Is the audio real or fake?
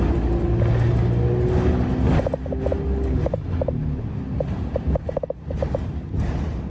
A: real